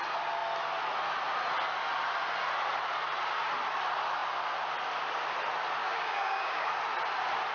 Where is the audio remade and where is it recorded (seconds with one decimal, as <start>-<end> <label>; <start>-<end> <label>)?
0.0-5.8 recorded; 5.8-6.7 remade; 6.7-7.5 recorded